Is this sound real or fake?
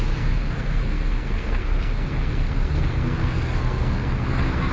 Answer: fake